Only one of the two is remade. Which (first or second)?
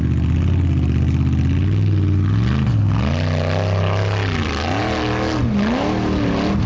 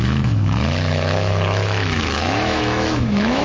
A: second